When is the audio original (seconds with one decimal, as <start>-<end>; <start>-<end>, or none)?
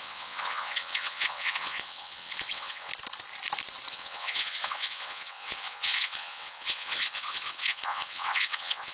2.9-3.9